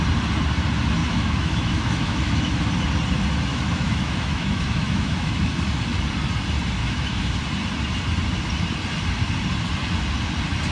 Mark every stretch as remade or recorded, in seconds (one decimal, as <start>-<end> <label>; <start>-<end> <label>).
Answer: 0.0-1.0 recorded; 1.0-2.6 remade; 2.6-3.5 recorded; 3.5-5.5 remade; 5.5-6.8 recorded; 6.8-7.3 remade; 7.3-10.7 recorded